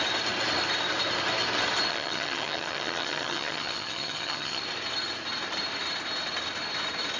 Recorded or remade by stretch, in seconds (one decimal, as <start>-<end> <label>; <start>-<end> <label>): 0.0-1.9 recorded; 1.9-4.6 remade; 4.6-7.2 recorded